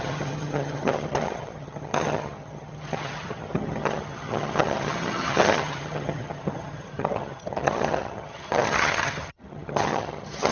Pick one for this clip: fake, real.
fake